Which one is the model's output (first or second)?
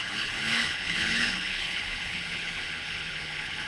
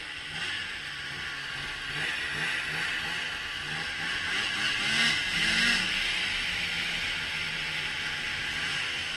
first